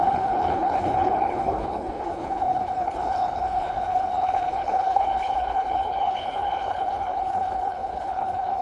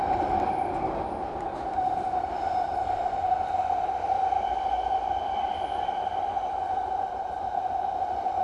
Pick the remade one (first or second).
first